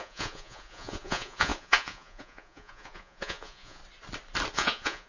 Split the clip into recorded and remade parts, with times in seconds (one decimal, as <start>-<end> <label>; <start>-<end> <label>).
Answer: 0.0-3.8 remade; 3.8-4.5 recorded; 4.5-5.1 remade